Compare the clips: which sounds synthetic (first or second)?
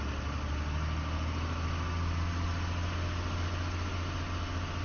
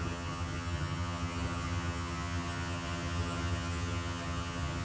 second